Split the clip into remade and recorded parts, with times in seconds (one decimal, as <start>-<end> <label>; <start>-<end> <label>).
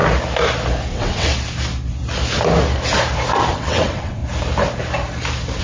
0.0-0.9 recorded; 0.9-1.3 remade; 1.3-3.5 recorded; 3.5-4.2 remade; 4.2-5.6 recorded